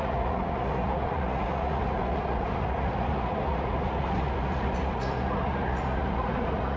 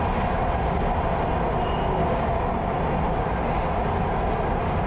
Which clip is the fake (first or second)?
first